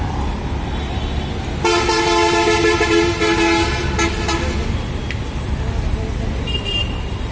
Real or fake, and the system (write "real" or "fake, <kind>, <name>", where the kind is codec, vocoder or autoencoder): real